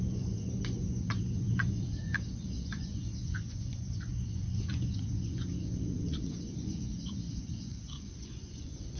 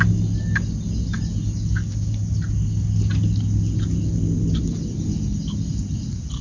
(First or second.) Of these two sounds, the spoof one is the first